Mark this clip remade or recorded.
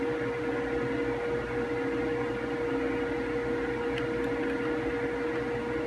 recorded